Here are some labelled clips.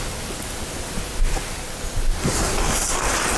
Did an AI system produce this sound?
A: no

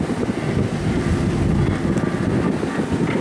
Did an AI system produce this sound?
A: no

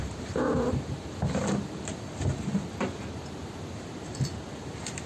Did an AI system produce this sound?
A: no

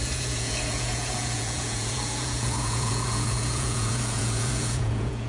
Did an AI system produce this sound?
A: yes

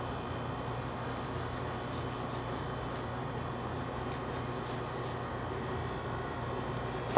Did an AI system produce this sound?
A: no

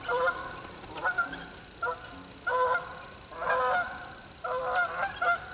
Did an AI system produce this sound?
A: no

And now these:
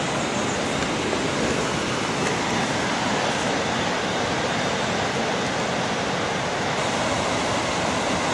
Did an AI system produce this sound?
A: no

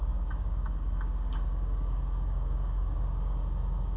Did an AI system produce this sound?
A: yes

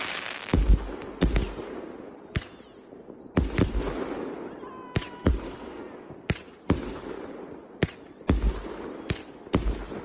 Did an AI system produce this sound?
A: no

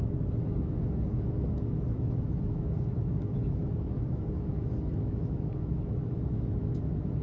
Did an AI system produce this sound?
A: yes